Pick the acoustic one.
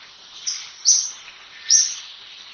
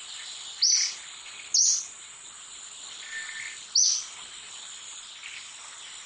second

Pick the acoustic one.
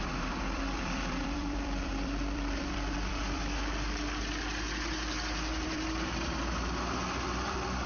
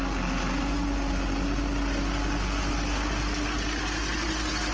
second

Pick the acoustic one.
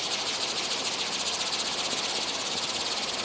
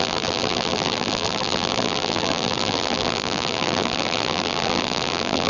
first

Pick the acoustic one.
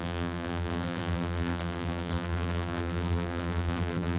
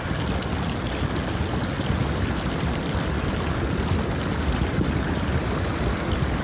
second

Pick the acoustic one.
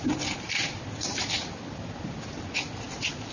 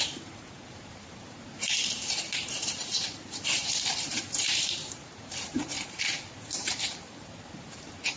first